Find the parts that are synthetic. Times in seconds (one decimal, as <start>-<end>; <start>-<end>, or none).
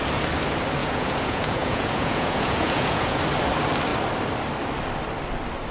0.8-3.2